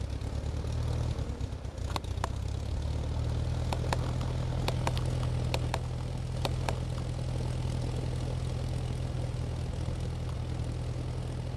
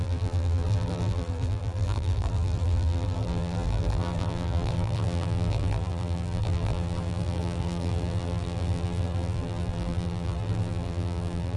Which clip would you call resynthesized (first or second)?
second